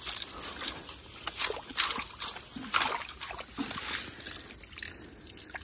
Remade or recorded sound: recorded